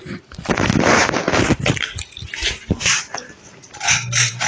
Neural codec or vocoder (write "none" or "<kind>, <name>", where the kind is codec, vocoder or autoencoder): none